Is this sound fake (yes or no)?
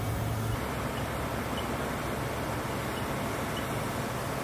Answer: no